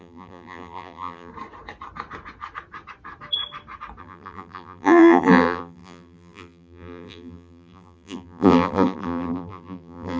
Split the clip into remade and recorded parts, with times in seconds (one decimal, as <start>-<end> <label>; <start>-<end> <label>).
0.0-1.3 remade; 1.3-4.0 recorded; 4.0-10.2 remade